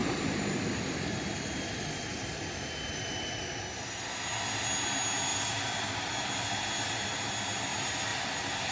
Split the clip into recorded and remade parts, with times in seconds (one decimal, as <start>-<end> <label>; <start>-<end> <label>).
0.0-3.7 remade; 3.7-5.3 recorded; 5.3-6.1 remade; 6.1-8.1 recorded; 8.1-8.7 remade